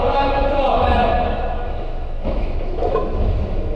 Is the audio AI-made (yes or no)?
yes